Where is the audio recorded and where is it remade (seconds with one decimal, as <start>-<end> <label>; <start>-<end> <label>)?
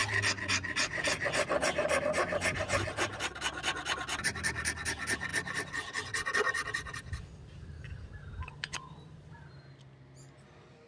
0.0-10.9 recorded